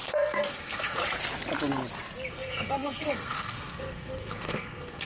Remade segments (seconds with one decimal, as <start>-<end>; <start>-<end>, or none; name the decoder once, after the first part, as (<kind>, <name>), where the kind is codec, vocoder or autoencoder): 0.0-1.0 (codec, SNAC); 2.3-5.0